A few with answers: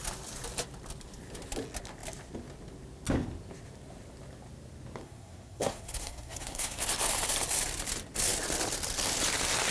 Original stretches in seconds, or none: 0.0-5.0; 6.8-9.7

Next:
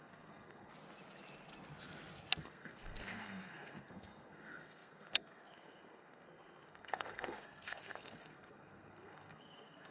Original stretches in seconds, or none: 0.7-2.4

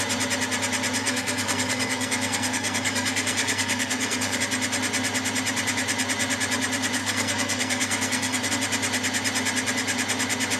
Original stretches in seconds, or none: 0.0-1.0; 4.4-7.0; 8.5-10.6

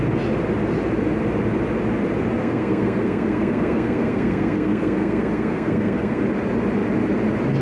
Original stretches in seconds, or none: 0.0-2.4; 6.2-7.6

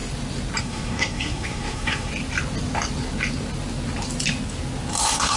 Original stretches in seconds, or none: 0.0-0.6; 2.1-5.0

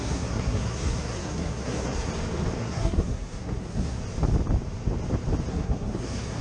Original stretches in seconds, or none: 2.1-2.6; 4.0-5.5

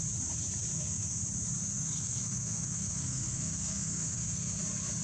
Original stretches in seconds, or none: 0.0-0.7; 1.2-1.6; 4.6-5.0